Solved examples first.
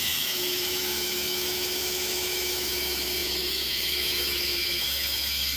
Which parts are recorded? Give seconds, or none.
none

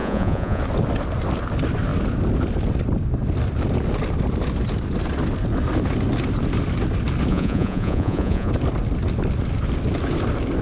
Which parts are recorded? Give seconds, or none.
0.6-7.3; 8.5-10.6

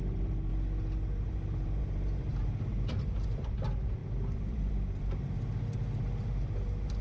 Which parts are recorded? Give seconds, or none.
0.0-2.3; 3.5-4.0; 4.7-7.0

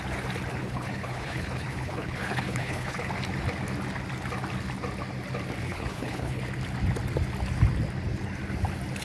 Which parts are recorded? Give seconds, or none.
0.0-0.5; 3.1-5.6; 6.4-9.0

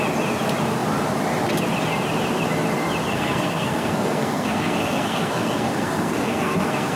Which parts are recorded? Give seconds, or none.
0.0-3.1